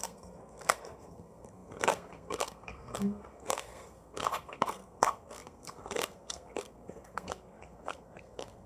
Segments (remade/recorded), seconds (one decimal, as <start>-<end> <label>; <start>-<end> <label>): 0.0-8.7 remade